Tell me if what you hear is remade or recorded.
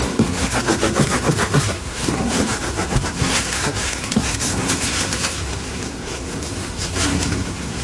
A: remade